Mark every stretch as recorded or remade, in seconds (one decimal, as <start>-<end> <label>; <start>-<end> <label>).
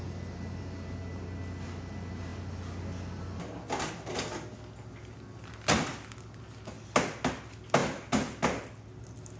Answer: 0.0-9.4 recorded